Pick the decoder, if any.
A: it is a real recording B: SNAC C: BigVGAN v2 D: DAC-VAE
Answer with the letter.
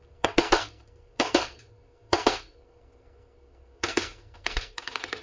B